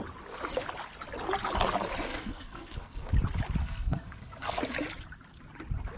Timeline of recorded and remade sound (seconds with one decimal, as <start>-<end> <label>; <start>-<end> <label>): 0.0-2.1 recorded; 2.1-3.1 remade; 3.1-3.6 recorded; 3.6-4.6 remade; 4.6-6.0 recorded